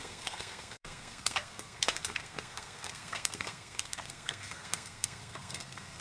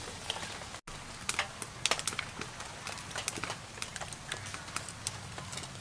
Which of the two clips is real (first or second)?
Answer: second